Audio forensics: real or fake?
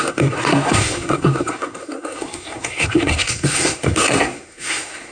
fake